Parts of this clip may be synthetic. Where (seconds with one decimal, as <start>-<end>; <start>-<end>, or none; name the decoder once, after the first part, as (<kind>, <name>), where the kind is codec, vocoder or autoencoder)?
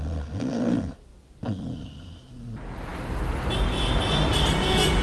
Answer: none